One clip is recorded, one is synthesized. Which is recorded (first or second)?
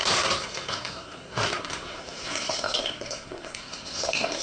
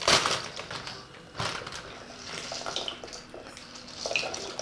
second